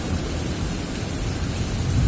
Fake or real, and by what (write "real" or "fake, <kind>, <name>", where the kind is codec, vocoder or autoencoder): real